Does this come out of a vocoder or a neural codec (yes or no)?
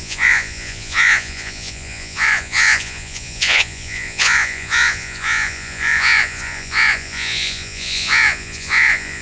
yes